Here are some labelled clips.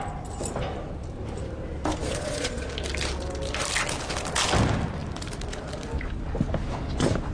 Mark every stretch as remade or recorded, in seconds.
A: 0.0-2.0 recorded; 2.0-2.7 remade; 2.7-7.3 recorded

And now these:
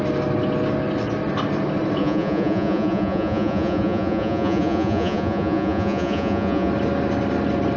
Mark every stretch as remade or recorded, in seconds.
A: 0.0-2.0 recorded; 2.0-6.7 remade; 6.7-7.8 recorded

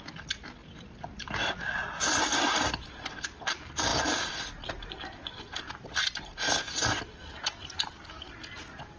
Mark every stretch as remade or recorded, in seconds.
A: 0.0-9.0 recorded